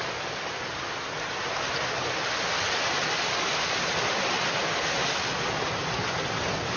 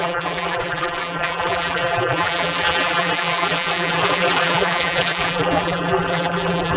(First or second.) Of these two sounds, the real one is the first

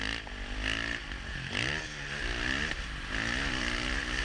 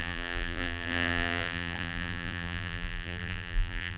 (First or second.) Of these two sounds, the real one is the first